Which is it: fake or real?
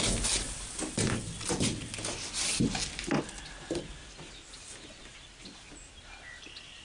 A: real